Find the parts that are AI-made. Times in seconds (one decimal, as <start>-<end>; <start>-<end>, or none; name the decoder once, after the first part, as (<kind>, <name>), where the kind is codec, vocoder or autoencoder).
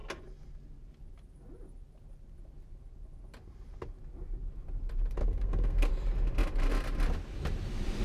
5.2-5.9 (codec, SNAC)